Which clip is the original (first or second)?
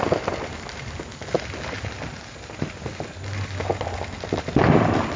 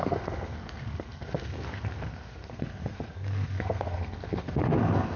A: first